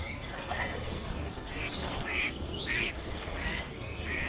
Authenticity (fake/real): fake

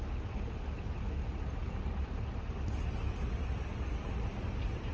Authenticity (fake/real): real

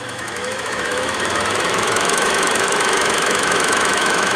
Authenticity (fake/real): fake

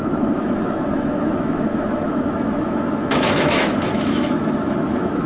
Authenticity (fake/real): fake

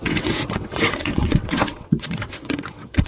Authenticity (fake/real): fake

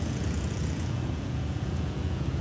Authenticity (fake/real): fake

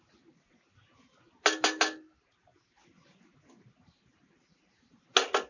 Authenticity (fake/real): real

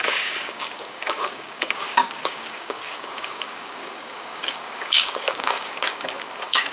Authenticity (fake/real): fake